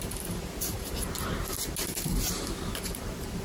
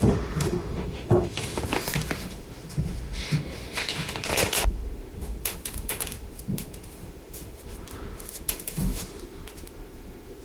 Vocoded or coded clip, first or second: second